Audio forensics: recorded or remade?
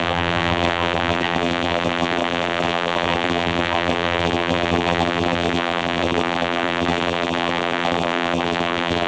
remade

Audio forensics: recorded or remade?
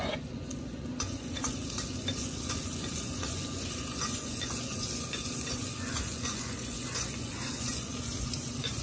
remade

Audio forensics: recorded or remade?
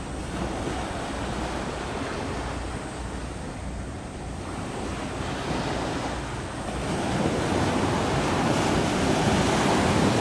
recorded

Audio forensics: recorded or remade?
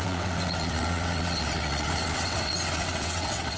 remade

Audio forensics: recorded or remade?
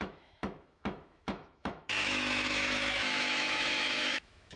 remade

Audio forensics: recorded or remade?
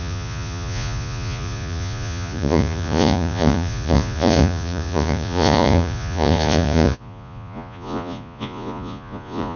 remade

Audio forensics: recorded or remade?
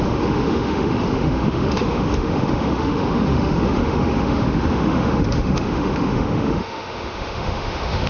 remade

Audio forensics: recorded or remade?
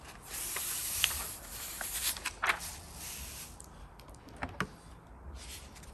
recorded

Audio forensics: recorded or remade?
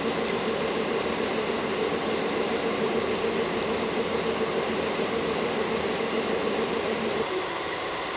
remade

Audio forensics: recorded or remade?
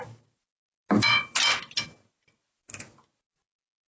recorded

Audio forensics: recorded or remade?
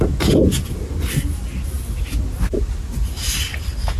recorded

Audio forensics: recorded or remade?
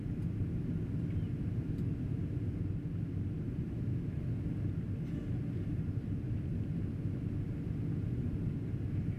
recorded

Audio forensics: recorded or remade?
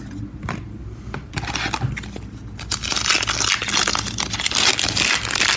recorded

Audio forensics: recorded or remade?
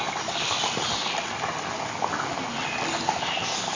recorded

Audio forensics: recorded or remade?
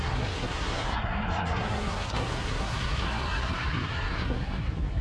remade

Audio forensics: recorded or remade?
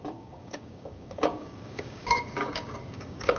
remade